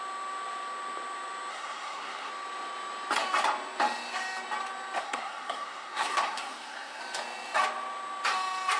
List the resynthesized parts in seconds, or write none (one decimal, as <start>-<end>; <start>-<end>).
1.5-2.3; 5.0-7.0